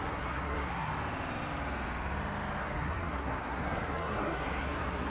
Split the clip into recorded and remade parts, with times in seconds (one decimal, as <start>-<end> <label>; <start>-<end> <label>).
0.0-0.9 remade; 0.9-2.6 recorded; 2.6-5.1 remade